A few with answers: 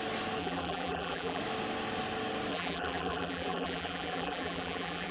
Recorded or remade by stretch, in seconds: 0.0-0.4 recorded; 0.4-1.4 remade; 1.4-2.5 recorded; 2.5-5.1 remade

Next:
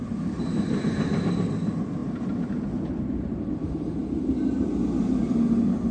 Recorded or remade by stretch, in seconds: 0.0-5.9 recorded

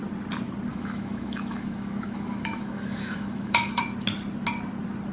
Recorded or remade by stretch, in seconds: 0.0-0.7 recorded; 0.7-3.8 remade; 3.8-5.1 recorded

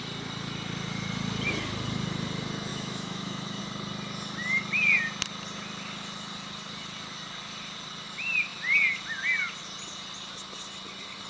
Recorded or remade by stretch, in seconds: 0.0-2.7 recorded; 2.7-3.6 remade; 3.6-11.3 recorded

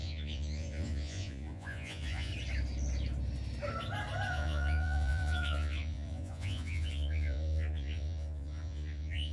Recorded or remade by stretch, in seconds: 0.0-2.3 remade; 2.3-4.3 recorded; 4.3-9.3 remade